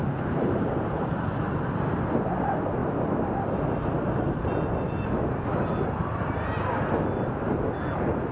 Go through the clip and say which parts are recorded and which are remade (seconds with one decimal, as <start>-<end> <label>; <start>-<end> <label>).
0.0-1.9 remade; 1.9-8.3 recorded

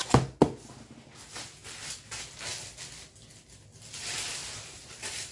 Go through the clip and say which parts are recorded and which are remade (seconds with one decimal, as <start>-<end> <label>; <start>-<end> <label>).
0.0-4.4 recorded; 4.4-5.3 remade

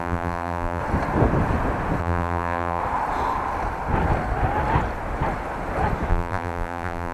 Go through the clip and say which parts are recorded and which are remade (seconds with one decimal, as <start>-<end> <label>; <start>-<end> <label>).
0.0-0.8 remade; 0.8-2.0 recorded; 2.0-2.8 remade; 2.8-6.1 recorded; 6.1-7.1 remade

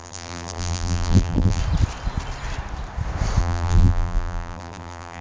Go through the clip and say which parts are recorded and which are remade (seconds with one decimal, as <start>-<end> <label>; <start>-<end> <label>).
0.0-1.6 remade; 1.6-3.4 recorded; 3.4-5.2 remade

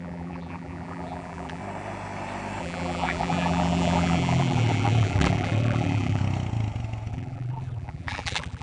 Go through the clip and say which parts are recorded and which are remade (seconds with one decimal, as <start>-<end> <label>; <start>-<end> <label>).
0.0-1.6 remade; 1.6-2.6 recorded; 2.6-6.2 remade; 6.2-7.1 recorded; 7.1-8.6 remade